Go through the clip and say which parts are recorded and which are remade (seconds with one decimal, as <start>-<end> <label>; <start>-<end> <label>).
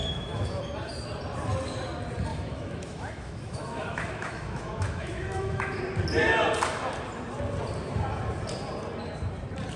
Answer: 0.0-0.6 remade; 0.6-2.3 recorded; 2.3-5.8 remade; 5.8-9.8 recorded